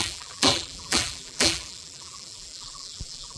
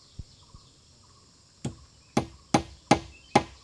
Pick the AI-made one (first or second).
first